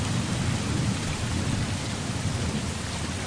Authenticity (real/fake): real